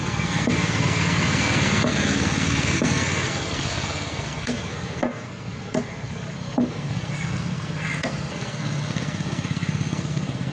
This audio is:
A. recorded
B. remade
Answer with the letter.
B